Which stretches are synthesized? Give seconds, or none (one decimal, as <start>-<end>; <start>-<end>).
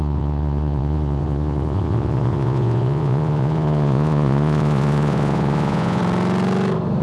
0.0-6.0